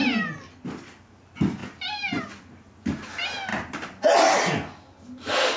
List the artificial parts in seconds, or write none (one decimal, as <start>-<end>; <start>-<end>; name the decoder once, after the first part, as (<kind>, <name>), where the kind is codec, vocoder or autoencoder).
1.6-2.2 (vocoder, BigVGAN v2)